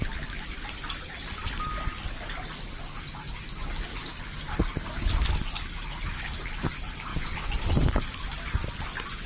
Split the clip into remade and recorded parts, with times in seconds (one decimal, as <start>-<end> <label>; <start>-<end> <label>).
0.0-9.3 recorded